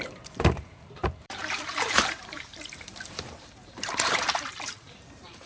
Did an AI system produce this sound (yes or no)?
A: yes